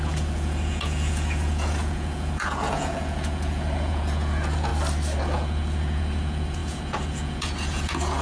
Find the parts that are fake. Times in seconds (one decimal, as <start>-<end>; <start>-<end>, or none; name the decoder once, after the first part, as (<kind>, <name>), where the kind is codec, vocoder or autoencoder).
0.0-4.7 (vocoder, Vocos); 5.2-8.2